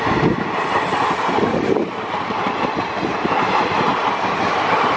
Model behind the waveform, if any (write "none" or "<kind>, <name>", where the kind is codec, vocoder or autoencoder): none